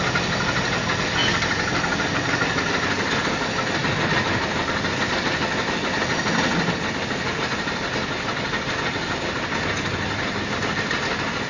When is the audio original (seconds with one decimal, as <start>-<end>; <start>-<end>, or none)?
0.0-11.5